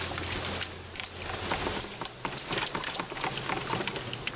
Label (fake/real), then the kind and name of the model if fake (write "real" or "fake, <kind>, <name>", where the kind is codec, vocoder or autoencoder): real